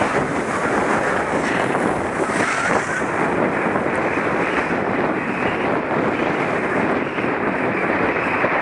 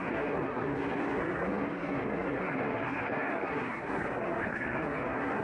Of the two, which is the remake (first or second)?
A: second